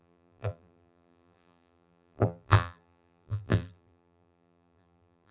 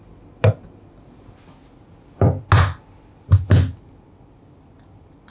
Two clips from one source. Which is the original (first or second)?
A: second